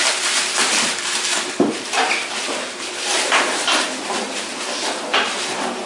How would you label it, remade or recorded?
remade